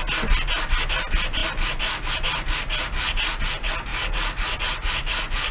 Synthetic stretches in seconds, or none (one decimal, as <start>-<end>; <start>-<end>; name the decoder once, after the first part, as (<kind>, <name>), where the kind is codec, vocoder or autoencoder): none